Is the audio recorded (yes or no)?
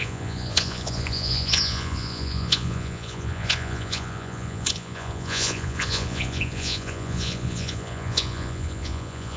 no